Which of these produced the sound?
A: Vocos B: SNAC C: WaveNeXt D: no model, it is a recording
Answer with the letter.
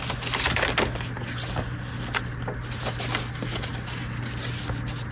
D